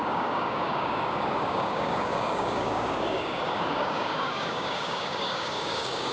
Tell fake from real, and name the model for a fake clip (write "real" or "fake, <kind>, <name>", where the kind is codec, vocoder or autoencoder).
fake, codec, DAC